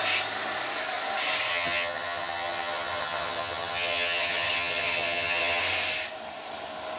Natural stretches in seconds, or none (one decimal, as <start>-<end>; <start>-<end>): 0.0-1.5; 5.6-7.0